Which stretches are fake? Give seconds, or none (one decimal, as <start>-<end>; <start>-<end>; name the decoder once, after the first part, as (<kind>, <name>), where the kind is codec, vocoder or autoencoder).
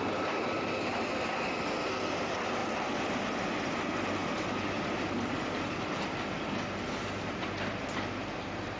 none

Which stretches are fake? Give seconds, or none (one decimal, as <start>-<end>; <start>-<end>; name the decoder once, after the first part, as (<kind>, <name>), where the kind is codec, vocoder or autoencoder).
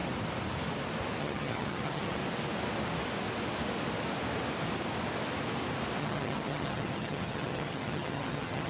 1.2-2.2 (vocoder, HiFi-GAN); 6.0-8.7